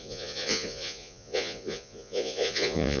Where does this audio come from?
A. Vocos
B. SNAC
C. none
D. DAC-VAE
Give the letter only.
A